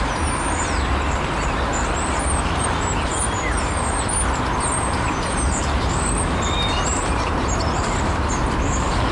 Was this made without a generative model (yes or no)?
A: no